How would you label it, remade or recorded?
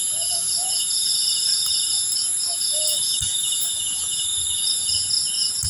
remade